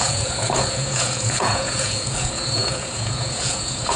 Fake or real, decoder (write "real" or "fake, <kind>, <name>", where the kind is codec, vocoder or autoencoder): fake, vocoder, Vocos